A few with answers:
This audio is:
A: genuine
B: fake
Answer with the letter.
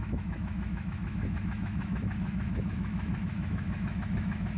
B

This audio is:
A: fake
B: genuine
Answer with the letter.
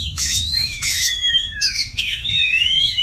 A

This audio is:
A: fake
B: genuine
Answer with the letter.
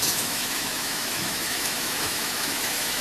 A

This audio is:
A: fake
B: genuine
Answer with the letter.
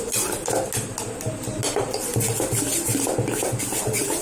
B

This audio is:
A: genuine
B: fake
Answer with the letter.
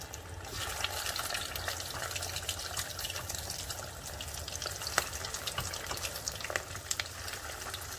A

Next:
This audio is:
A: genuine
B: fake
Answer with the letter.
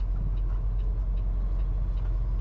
A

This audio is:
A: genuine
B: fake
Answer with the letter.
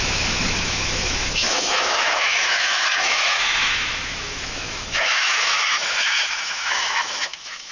B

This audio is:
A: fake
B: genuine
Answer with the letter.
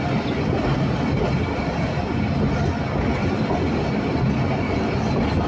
B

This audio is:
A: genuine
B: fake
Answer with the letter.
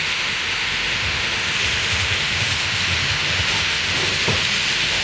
B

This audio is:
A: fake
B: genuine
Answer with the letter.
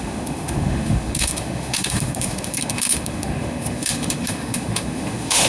A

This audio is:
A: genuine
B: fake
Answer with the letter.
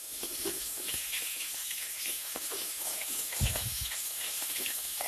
B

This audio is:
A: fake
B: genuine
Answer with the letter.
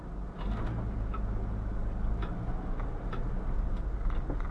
B